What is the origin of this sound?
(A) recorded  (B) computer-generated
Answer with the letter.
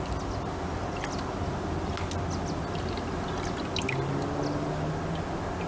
A